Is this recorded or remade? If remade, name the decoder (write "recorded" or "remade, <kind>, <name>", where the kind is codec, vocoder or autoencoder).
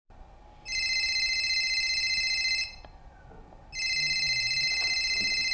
recorded